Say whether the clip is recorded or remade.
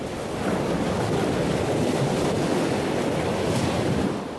recorded